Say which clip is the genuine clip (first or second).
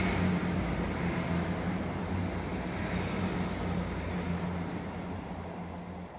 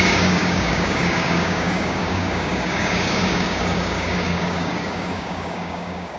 first